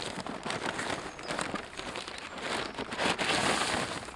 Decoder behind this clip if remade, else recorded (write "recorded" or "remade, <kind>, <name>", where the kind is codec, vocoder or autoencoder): recorded